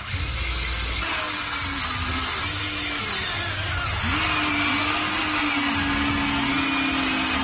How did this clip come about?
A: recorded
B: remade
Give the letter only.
A